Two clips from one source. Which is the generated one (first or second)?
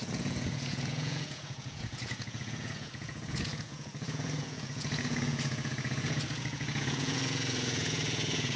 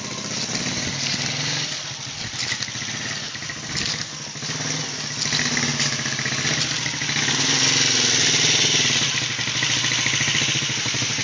first